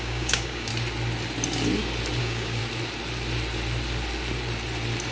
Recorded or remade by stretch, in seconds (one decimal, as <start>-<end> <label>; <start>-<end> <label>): 0.0-0.7 remade; 0.7-2.2 recorded; 2.2-2.6 remade; 2.6-5.1 recorded